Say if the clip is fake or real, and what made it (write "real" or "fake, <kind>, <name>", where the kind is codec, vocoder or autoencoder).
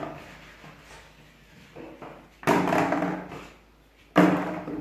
real